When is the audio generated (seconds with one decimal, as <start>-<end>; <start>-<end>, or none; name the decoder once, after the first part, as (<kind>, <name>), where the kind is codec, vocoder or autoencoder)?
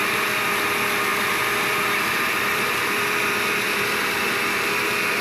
1.1-4.2 (vocoder, BigVGAN v2)